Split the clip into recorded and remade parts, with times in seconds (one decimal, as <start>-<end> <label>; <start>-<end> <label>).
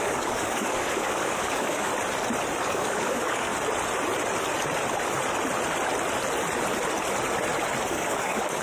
0.0-1.9 remade; 1.9-2.6 recorded; 2.6-3.5 remade; 3.5-7.9 recorded; 7.9-8.6 remade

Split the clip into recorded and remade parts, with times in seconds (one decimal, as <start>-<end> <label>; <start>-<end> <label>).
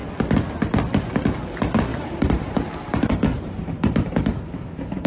0.0-1.9 recorded; 1.9-5.1 remade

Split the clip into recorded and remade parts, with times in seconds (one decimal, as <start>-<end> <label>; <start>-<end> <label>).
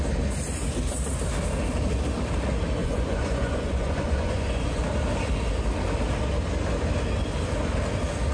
0.0-2.8 recorded; 2.8-4.8 remade; 4.8-8.3 recorded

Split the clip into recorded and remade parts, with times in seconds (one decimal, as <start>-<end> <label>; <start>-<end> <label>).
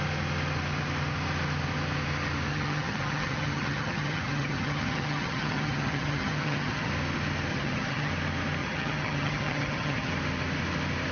0.0-2.5 recorded; 2.5-6.9 remade; 6.9-7.5 recorded; 7.5-8.1 remade; 8.1-8.6 recorded; 8.6-10.1 remade; 10.1-11.1 recorded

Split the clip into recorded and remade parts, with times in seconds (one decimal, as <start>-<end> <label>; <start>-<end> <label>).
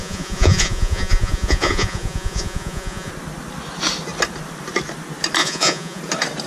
0.0-3.1 remade; 3.1-5.4 recorded; 5.4-6.0 remade; 6.0-6.5 recorded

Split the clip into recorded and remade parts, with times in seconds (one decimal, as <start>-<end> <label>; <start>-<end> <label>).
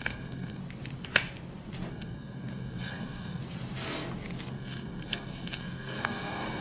0.0-0.6 remade; 0.6-1.9 recorded; 1.9-3.4 remade; 3.4-4.5 recorded; 4.5-6.6 remade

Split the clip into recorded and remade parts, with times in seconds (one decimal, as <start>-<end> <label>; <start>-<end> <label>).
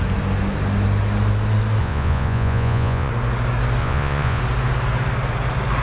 0.0-1.8 recorded; 1.8-3.1 remade; 3.1-3.8 recorded; 3.8-4.4 remade; 4.4-5.8 recorded